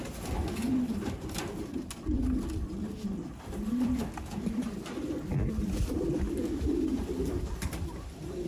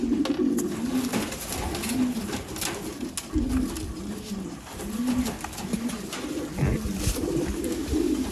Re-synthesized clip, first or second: first